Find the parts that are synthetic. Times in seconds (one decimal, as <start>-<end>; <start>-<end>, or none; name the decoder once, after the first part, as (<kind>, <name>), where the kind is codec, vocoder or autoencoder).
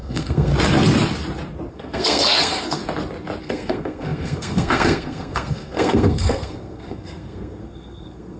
0.0-0.5 (codec, SNAC); 1.7-2.8; 3.4-8.4